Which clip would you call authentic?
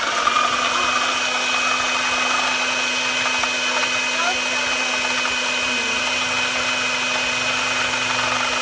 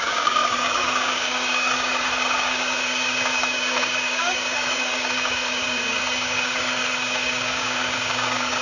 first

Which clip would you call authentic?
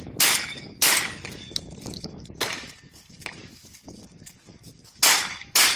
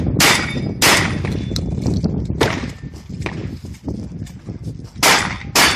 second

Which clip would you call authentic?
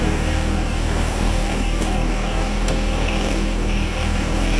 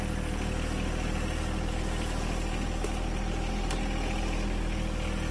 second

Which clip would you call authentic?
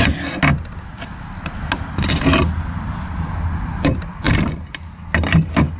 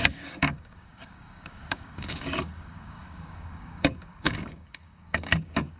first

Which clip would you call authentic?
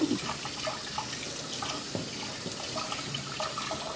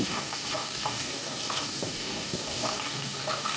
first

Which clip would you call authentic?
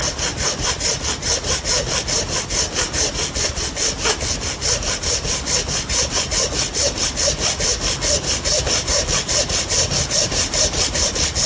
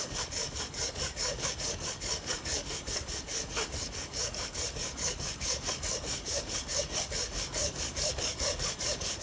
first